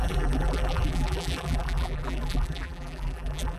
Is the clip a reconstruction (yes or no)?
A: yes